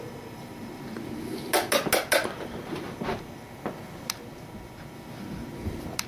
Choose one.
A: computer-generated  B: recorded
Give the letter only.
B